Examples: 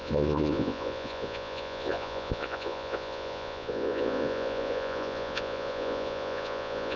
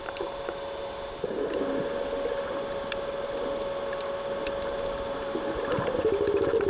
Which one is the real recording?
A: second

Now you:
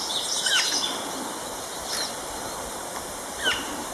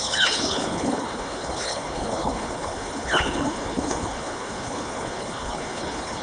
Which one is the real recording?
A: first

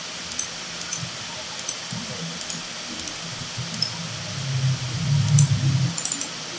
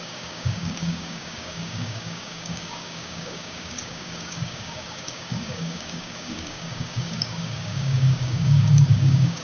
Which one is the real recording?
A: first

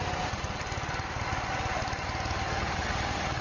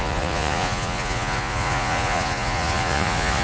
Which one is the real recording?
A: first